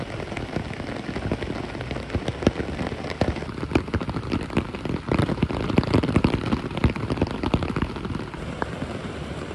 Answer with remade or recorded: remade